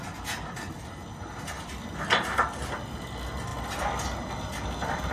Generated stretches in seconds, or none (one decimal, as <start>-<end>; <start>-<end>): none